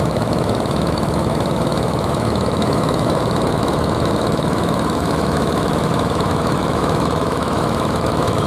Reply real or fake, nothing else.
fake